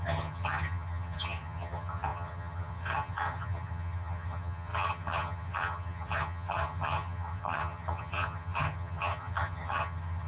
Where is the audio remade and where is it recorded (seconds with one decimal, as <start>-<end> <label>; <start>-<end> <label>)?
0.0-10.3 remade